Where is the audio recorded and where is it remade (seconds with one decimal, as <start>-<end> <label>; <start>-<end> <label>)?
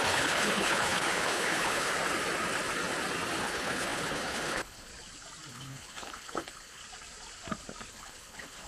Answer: 0.0-1.9 remade; 1.9-3.4 recorded; 3.4-4.9 remade; 4.9-5.5 recorded; 5.5-6.8 remade; 6.8-7.9 recorded; 7.9-8.7 remade